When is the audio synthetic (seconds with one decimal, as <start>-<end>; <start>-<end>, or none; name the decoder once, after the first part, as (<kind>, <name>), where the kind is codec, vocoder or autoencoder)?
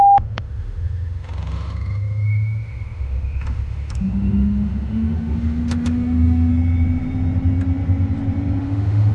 0.0-6.5 (autoencoder, DAC-VAE); 8.6-9.1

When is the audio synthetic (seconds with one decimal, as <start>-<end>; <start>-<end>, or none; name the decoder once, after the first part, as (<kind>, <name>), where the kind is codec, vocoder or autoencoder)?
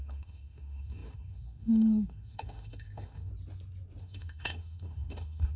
0.0-3.3 (autoencoder, DAC-VAE); 4.0-5.6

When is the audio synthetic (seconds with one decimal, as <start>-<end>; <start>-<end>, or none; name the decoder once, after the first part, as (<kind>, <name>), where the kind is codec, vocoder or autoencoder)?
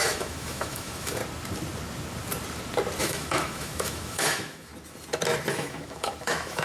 0.0-1.2 (autoencoder, DAC-VAE); 3.0-4.7; 5.5-6.6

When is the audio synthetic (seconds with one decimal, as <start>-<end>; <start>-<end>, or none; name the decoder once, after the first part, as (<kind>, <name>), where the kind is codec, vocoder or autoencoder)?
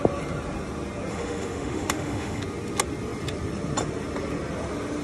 1.1-2.4 (autoencoder, DAC-VAE)